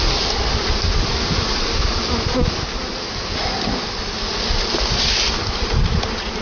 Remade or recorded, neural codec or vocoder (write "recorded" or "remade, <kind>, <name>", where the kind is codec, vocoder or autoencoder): recorded